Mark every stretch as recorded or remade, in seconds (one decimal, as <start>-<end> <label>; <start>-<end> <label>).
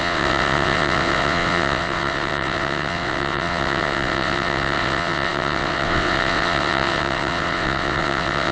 0.0-8.5 remade